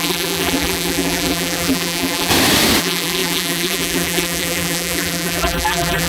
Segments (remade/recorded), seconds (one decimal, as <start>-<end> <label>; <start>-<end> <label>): 0.0-2.3 remade; 2.3-2.8 recorded; 2.8-6.1 remade